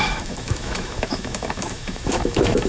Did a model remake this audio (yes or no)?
yes